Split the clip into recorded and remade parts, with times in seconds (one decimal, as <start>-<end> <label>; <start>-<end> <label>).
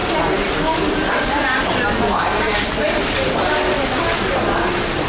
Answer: 0.0-2.2 recorded; 2.2-2.7 remade; 2.7-5.1 recorded